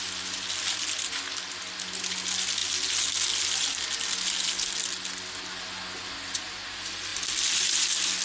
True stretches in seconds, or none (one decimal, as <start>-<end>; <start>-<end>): 0.0-8.2

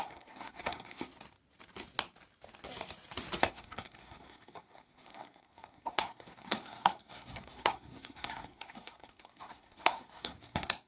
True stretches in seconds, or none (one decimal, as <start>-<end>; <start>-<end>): 1.1-3.5

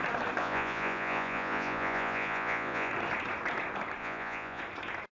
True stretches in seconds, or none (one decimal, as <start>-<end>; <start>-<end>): 0.0-0.4; 2.9-4.0; 4.6-5.1

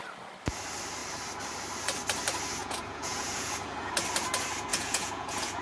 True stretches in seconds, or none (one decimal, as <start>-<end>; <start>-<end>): 0.0-2.6; 3.9-4.7